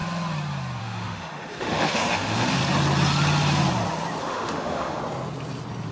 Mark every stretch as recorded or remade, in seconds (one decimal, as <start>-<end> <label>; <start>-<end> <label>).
0.0-0.8 recorded; 0.8-2.6 remade; 2.6-4.2 recorded; 4.2-5.0 remade; 5.0-5.9 recorded